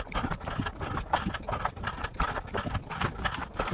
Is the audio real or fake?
real